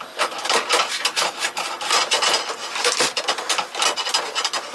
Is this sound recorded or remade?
recorded